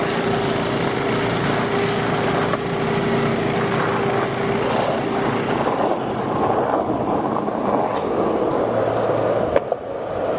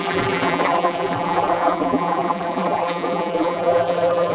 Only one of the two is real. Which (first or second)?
first